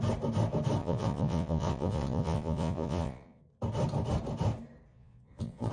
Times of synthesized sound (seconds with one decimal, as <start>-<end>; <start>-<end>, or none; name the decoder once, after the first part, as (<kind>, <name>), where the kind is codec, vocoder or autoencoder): 0.8-3.4 (vocoder, Vocos); 4.9-5.7